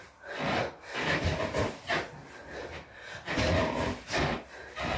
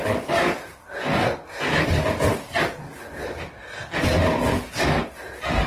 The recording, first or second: second